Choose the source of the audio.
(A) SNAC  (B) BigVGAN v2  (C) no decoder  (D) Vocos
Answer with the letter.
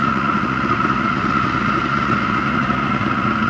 D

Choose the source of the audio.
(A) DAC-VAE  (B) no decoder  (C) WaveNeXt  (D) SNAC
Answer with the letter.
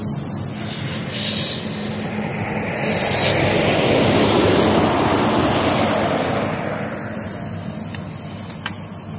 B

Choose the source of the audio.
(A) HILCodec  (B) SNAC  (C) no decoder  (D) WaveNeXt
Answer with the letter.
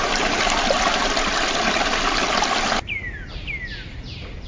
C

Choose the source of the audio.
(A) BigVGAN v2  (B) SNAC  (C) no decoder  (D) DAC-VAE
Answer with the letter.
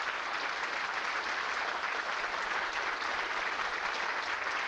C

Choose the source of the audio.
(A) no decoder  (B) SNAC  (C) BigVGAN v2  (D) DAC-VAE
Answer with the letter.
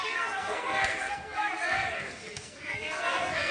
B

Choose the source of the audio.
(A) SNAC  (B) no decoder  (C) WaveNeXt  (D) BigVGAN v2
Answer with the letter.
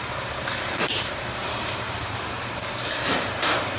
D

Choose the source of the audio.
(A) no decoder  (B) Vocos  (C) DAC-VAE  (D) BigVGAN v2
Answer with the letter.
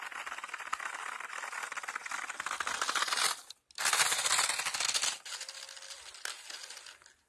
A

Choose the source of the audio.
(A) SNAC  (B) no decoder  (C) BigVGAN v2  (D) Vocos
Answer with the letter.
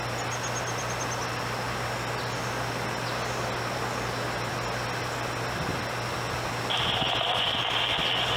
B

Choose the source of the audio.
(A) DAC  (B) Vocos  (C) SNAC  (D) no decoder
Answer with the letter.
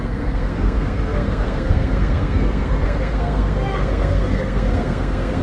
C